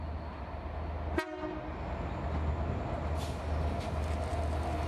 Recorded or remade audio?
recorded